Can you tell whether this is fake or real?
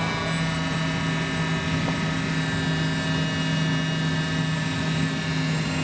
real